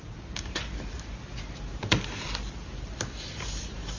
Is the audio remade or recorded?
recorded